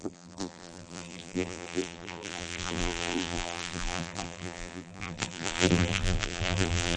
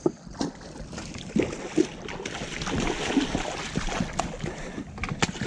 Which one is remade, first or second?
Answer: first